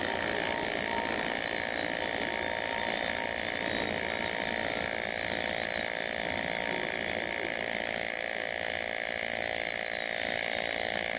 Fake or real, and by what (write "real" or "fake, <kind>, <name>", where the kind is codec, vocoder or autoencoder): real